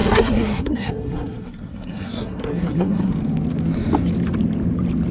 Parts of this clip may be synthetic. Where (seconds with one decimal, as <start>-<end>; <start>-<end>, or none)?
0.0-3.1